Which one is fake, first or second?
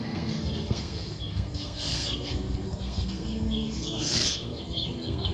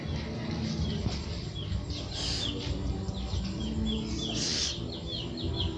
first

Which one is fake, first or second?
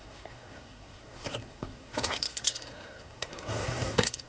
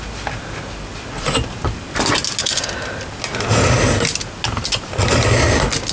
first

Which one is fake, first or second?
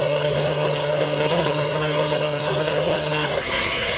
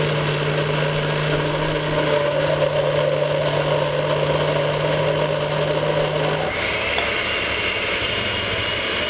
first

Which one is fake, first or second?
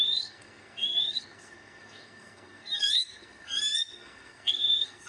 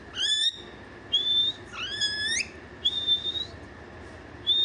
first